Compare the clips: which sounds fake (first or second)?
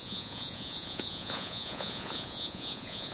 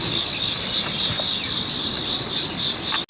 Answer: first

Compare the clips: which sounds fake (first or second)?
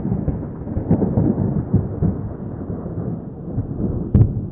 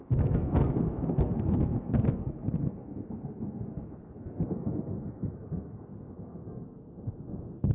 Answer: second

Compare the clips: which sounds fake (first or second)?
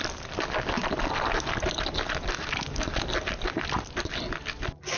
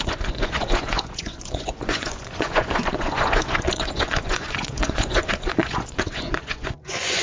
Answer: second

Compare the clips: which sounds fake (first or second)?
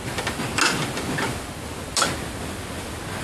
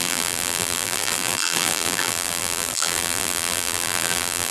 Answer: second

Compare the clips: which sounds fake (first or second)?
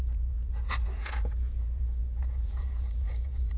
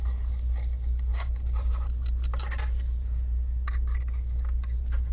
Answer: first